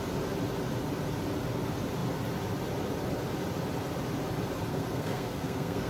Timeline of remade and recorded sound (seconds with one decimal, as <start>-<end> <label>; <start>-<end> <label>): 0.0-4.7 recorded; 4.7-5.9 remade

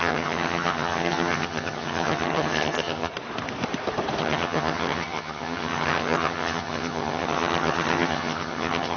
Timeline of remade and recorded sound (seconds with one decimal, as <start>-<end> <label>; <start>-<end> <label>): 0.0-3.1 remade; 3.1-4.2 recorded; 4.2-9.0 remade

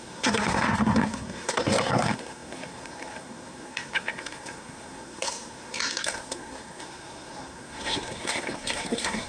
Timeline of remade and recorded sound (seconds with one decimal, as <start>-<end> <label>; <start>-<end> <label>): 0.0-9.3 remade

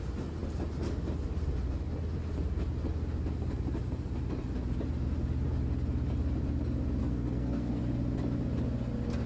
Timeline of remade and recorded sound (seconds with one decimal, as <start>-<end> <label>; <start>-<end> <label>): 0.0-7.0 recorded; 7.0-7.8 remade; 7.8-9.3 recorded

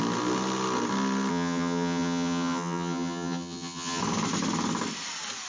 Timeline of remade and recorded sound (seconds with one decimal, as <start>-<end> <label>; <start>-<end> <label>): 0.0-1.3 recorded; 1.3-4.0 remade; 4.0-5.5 recorded

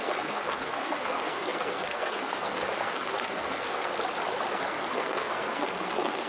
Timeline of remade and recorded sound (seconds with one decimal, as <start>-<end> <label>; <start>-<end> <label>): 0.0-3.9 remade; 3.9-4.5 recorded; 4.5-6.3 remade

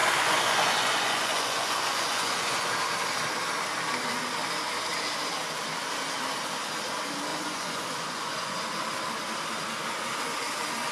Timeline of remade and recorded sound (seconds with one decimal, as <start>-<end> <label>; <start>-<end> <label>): 0.0-2.7 remade; 2.7-7.3 recorded; 7.3-8.8 remade; 8.8-10.9 recorded